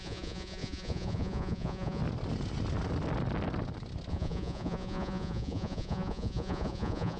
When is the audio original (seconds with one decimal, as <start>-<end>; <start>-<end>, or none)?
2.0-4.1